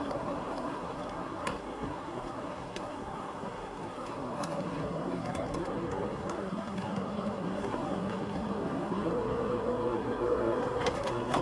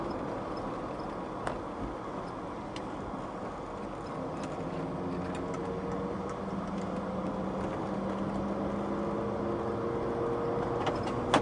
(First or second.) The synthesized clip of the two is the first